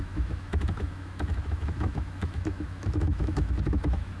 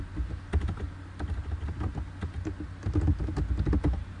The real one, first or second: second